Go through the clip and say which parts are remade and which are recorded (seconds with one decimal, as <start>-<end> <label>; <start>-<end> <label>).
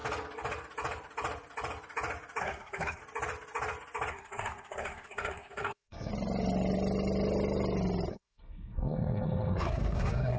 0.0-2.4 recorded; 2.4-3.0 remade; 3.0-4.1 recorded; 4.1-6.1 remade; 6.1-8.1 recorded; 8.1-10.4 remade